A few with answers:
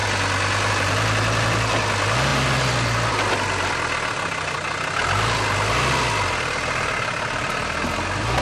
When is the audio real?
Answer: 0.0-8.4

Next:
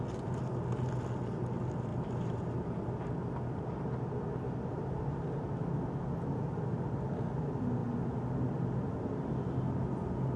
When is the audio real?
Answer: 0.0-1.9; 2.8-4.7; 5.4-10.4

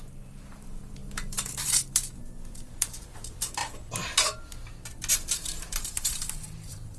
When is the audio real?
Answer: 3.6-5.1

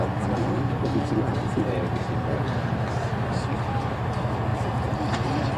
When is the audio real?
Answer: 0.0-1.3; 2.0-4.5; 5.0-5.6

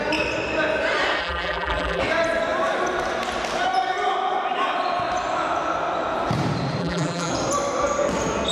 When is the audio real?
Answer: 0.0-1.2; 2.0-6.8; 7.3-8.5